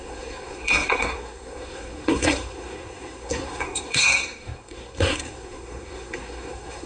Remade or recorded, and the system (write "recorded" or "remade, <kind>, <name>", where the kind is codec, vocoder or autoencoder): remade, codec, SNAC